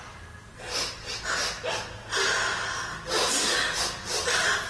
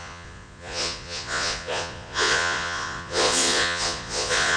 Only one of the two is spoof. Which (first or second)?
second